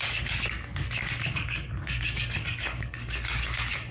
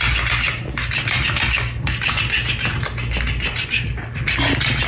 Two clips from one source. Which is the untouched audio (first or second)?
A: second